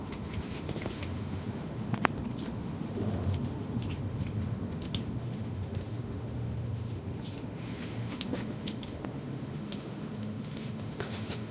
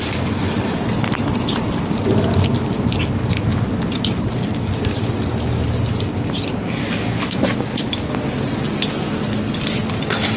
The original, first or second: second